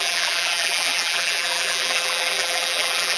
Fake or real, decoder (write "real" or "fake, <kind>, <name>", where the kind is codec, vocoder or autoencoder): fake, vocoder, BigVGAN v2